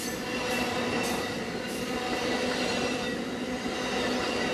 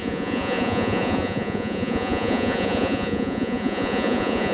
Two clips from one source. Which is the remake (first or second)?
second